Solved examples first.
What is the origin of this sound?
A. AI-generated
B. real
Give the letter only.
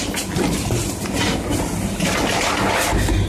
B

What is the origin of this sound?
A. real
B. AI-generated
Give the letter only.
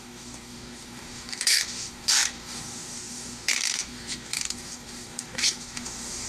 B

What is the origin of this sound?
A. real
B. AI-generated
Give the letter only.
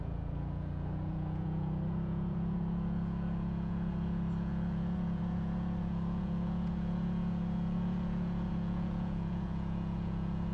B